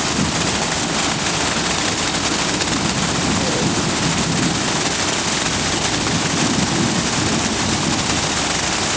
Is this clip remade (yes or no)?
no